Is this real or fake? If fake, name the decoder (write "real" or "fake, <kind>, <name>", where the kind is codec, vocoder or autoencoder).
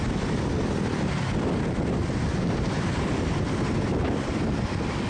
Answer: real